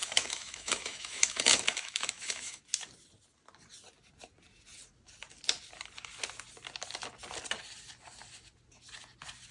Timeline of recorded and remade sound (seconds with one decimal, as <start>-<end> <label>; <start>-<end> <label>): 0.0-2.6 remade; 2.6-9.5 recorded